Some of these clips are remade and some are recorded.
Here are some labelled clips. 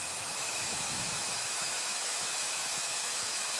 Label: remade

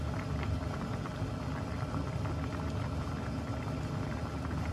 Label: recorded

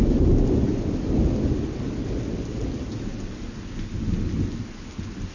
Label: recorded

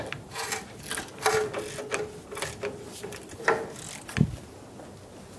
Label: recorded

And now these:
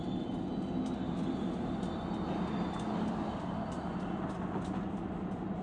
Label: recorded